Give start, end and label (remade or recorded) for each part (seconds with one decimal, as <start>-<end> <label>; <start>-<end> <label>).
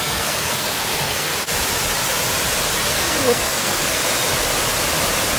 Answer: 0.0-1.3 remade; 1.3-2.9 recorded; 2.9-4.0 remade; 4.0-5.4 recorded